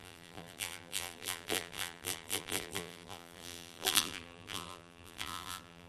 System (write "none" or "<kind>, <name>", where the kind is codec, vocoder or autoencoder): vocoder, BigVGAN v2